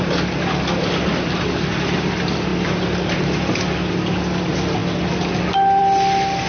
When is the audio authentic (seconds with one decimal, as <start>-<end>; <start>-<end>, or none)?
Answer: 0.0-6.5